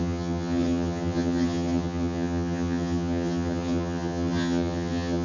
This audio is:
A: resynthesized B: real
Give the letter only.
A